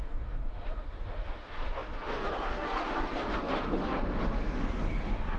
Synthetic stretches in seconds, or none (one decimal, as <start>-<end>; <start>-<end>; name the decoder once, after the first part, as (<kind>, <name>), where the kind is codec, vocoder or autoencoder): 0.0-5.4 (autoencoder, DAC-VAE)